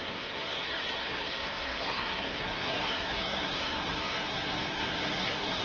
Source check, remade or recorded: remade